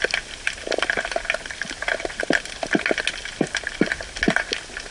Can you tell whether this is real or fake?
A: real